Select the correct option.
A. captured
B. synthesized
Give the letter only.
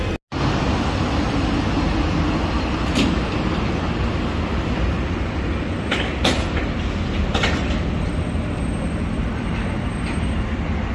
A